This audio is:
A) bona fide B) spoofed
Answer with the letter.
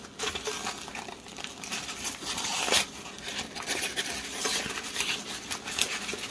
A